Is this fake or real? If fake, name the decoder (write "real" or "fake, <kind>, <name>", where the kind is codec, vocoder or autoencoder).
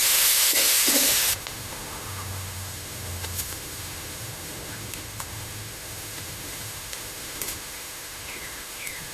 fake, autoencoder, DAC-VAE